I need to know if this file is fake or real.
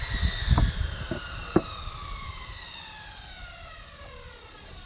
real